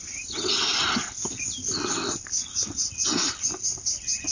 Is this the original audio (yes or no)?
yes